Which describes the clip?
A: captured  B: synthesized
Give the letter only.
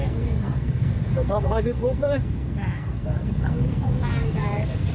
B